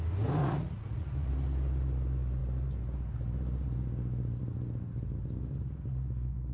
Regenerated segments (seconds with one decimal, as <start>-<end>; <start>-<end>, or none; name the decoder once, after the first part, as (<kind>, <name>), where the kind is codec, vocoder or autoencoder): 0.4-1.3 (vocoder, Vocos)